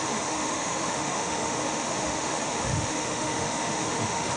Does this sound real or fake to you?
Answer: fake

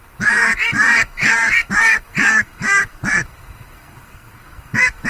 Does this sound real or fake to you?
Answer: fake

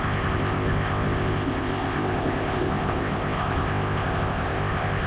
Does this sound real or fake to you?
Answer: fake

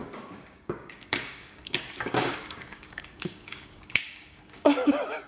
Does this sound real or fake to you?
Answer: fake